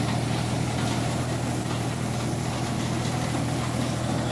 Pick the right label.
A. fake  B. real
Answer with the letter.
B